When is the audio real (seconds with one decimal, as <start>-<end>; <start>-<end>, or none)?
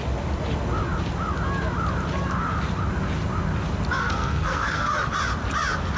0.0-4.0; 4.9-6.0